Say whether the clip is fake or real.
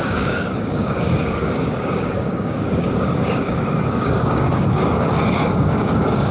fake